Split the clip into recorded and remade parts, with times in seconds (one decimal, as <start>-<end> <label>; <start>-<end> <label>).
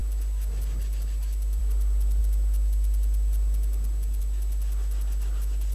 0.0-5.7 recorded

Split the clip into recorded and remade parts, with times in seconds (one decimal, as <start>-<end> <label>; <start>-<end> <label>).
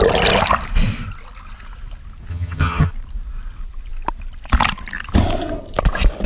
0.0-2.3 recorded; 2.3-2.9 remade; 2.9-6.3 recorded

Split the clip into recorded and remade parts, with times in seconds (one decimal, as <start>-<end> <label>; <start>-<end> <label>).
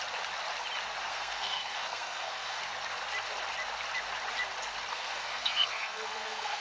0.0-1.1 recorded; 1.1-2.6 remade; 2.6-4.9 recorded; 4.9-6.6 remade